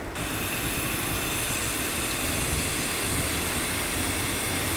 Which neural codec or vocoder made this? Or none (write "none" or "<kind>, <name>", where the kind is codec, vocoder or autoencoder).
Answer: none